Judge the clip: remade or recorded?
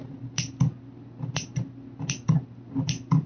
recorded